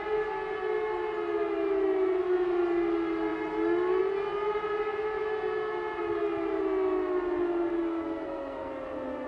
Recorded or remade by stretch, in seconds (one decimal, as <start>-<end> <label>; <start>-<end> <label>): 0.0-7.7 recorded; 7.7-8.7 remade; 8.7-9.3 recorded